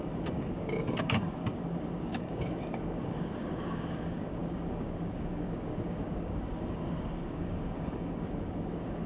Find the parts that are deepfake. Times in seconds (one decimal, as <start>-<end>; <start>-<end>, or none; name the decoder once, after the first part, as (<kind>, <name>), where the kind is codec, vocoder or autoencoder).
0.0-9.1 (codec, DAC)

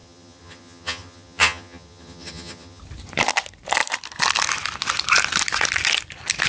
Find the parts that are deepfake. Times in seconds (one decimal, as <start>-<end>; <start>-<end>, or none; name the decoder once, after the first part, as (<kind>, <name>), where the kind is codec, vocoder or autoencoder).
0.0-2.8 (vocoder, HiFi-GAN)

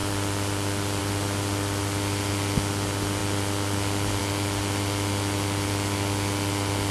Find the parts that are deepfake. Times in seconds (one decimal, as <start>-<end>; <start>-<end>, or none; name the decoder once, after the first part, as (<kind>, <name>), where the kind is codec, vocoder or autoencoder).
0.0-1.0 (vocoder, BigVGAN v2); 3.2-4.2

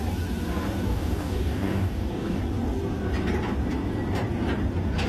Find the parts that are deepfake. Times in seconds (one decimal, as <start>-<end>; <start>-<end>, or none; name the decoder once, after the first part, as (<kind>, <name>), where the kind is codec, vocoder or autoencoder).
0.9-2.4 (codec, DAC)

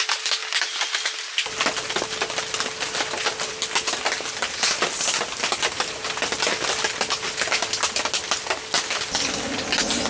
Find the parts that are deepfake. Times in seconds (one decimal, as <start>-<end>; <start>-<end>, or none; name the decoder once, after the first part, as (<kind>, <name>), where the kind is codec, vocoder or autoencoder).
none

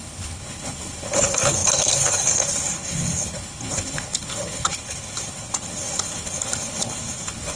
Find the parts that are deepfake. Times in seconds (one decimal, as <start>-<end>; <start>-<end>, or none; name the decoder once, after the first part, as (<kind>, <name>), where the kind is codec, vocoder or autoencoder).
0.0-7.6 (codec, HILCodec)